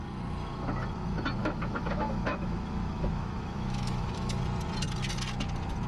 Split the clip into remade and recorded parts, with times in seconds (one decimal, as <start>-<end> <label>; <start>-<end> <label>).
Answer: 0.0-1.4 recorded; 1.4-4.4 remade; 4.4-5.9 recorded